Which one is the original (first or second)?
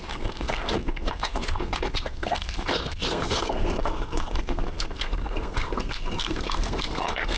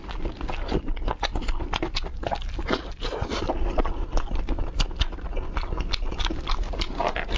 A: second